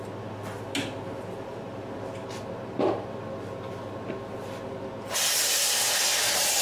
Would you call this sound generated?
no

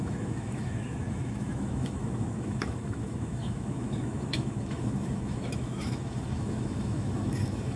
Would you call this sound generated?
yes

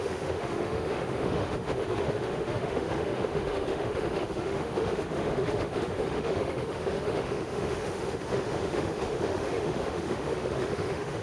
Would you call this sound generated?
yes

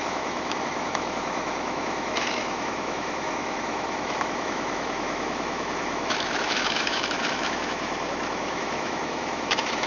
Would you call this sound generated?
yes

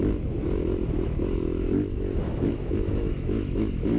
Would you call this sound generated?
yes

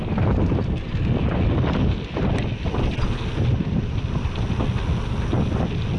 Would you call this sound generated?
no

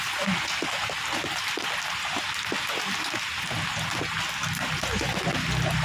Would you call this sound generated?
no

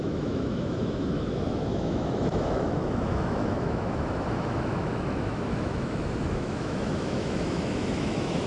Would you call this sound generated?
yes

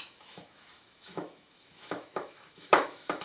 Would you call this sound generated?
yes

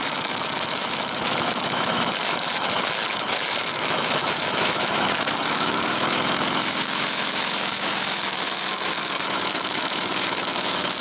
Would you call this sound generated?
yes